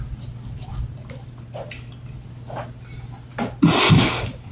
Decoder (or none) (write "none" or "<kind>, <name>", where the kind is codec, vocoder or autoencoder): none